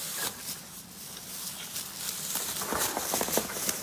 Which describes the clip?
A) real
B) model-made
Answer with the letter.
A